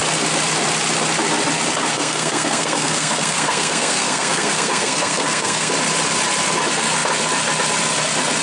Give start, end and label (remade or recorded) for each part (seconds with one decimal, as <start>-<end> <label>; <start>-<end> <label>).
0.0-1.9 recorded; 1.9-5.7 remade; 5.7-8.4 recorded